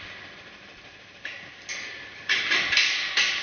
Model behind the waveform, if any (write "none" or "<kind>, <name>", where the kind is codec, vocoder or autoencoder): none